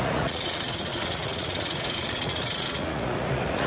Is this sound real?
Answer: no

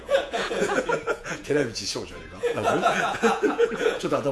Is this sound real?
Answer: no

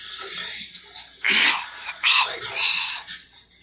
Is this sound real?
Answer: yes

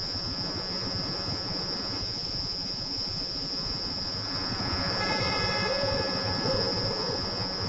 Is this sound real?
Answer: no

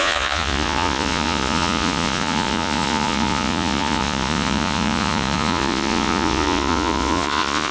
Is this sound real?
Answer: no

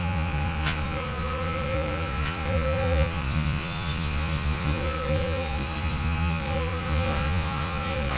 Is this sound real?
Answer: no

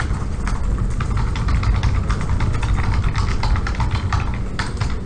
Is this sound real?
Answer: yes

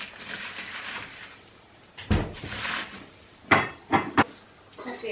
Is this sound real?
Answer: yes